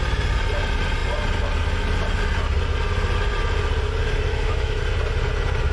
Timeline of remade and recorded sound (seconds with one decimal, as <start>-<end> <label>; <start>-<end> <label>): 0.0-4.3 recorded; 4.3-4.8 remade; 4.8-5.7 recorded